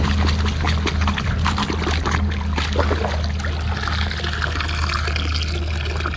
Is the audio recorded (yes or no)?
yes